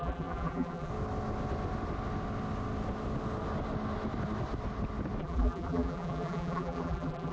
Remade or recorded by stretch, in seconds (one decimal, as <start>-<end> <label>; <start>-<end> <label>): 0.0-0.9 remade; 0.9-5.2 recorded; 5.2-7.3 remade